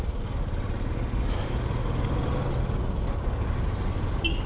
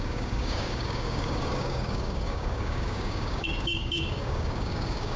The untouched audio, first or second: first